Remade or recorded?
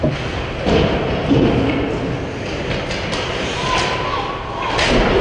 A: recorded